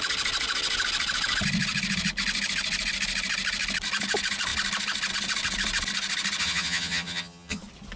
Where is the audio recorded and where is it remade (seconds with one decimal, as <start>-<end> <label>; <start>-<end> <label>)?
0.0-6.4 recorded; 6.4-7.6 remade; 7.6-8.0 recorded